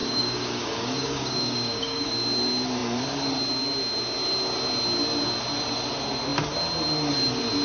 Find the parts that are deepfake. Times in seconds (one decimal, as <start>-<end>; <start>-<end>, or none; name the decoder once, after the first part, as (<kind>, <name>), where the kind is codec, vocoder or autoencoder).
0.0-2.1 (codec, DAC)